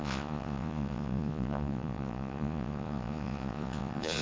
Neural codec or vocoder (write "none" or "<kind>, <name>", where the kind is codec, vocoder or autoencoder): vocoder, Vocos